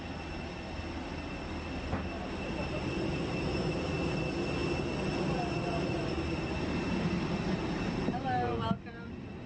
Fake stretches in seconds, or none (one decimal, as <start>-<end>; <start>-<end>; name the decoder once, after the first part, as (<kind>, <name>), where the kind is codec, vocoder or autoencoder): none